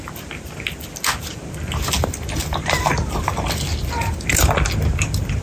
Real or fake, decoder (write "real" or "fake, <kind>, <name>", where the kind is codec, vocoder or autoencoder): real